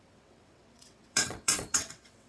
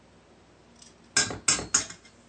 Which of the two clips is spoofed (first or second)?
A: first